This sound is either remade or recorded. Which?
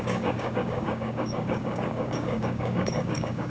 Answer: remade